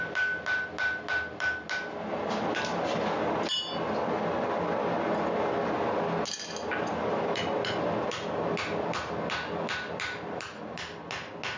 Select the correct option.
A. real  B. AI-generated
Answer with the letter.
A